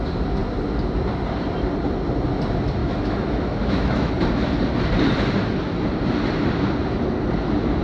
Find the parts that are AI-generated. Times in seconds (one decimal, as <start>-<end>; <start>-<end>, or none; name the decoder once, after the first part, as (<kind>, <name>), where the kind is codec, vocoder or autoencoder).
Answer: 2.8-4.1 (autoencoder, DAC-VAE)